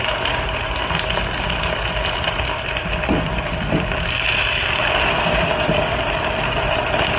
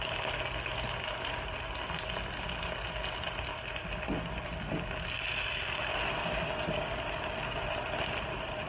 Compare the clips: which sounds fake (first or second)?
first